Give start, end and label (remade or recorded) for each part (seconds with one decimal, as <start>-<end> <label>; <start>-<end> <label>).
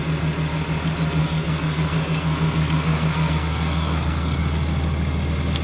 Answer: 0.0-1.2 recorded; 1.2-4.4 remade; 4.4-5.6 recorded